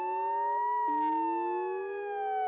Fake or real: real